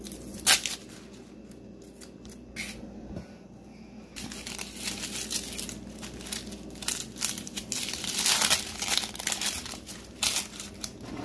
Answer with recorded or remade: recorded